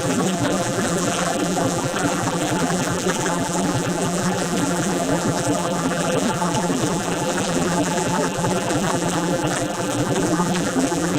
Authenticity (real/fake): fake